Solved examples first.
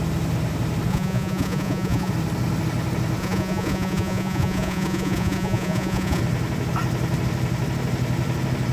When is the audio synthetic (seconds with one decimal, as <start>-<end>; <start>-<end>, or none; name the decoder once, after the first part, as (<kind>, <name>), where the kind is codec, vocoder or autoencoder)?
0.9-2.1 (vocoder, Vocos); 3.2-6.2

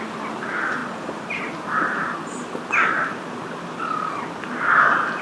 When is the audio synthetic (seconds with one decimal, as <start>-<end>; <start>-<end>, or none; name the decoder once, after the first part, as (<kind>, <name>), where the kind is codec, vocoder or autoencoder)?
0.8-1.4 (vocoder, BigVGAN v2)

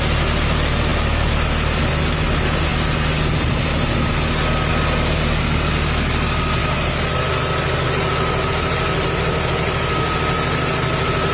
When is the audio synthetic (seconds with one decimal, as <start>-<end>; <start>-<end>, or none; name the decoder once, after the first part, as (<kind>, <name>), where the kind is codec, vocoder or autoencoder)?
none

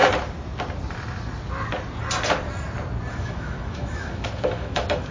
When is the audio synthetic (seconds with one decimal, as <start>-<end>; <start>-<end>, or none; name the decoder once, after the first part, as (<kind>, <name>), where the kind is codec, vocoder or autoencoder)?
3.1-5.1 (autoencoder, DAC-VAE)